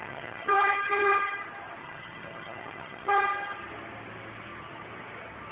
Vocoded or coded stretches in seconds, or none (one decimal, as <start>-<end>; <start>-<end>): 0.0-1.3; 1.8-3.2